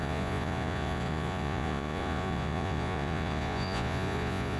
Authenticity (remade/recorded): remade